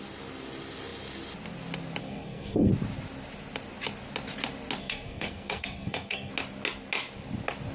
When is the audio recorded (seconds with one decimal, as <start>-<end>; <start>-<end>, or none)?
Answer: 0.0-2.0; 2.7-4.8; 6.3-7.7